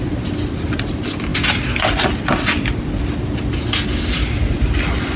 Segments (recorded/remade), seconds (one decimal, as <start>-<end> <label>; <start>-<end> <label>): 0.0-5.2 recorded

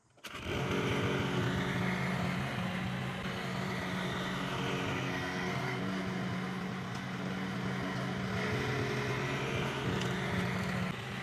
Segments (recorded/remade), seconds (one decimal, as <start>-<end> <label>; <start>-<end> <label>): 0.0-4.9 recorded; 4.9-5.8 remade; 5.8-11.2 recorded

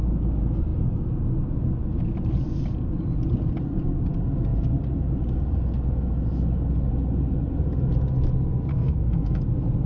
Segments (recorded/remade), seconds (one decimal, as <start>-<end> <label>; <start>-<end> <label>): 0.0-8.7 recorded; 8.7-9.4 remade; 9.4-9.9 recorded

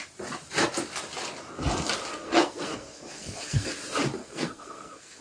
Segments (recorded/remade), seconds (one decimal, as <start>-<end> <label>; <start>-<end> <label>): 0.0-2.1 recorded; 2.1-3.7 remade; 3.7-4.2 recorded; 4.2-5.2 remade